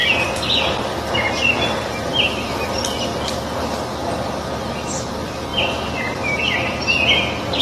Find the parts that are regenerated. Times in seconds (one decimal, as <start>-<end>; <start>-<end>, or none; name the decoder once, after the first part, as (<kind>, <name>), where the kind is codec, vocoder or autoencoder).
none